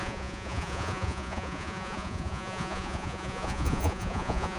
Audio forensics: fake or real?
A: fake